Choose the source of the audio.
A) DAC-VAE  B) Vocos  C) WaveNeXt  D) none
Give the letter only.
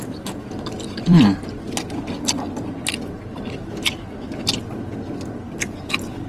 D